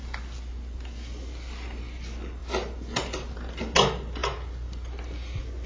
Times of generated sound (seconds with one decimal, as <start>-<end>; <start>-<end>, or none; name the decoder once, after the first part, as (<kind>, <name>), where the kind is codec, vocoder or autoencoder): none